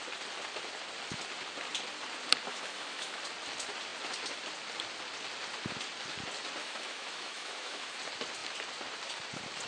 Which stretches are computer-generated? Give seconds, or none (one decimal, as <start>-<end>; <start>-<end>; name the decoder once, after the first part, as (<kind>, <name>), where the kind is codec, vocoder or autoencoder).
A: 2.5-3.2 (autoencoder, DAC-VAE); 6.6-8.0